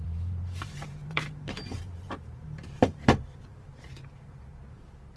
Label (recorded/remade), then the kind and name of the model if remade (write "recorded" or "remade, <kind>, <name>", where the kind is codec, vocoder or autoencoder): remade, vocoder, BigVGAN v2